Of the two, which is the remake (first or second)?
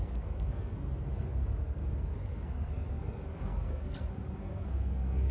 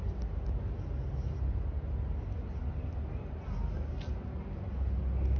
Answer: first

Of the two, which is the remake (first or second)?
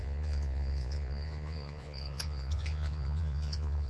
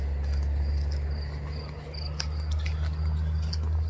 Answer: first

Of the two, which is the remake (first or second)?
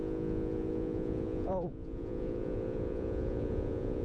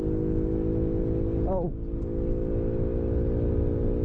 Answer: first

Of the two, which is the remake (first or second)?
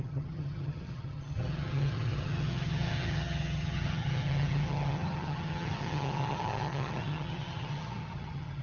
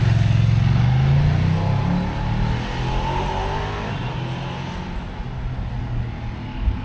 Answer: first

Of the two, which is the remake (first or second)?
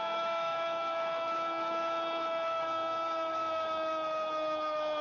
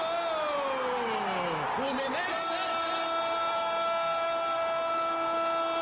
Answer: first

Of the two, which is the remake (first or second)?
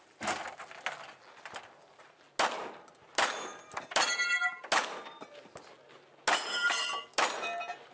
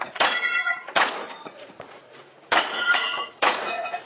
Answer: second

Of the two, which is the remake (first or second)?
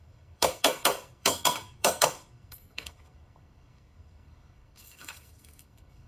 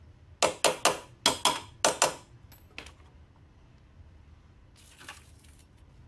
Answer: first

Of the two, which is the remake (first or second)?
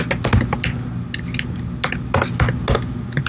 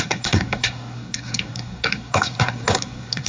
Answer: second